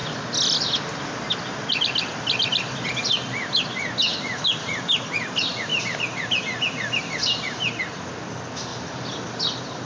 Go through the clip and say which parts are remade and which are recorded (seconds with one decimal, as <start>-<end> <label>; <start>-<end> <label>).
0.0-8.7 recorded; 8.7-9.4 remade; 9.4-9.9 recorded